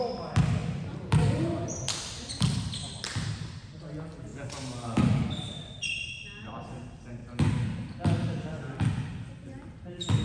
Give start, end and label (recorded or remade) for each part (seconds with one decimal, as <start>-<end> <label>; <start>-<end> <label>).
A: 0.0-0.6 recorded; 0.6-2.3 remade; 2.3-10.2 recorded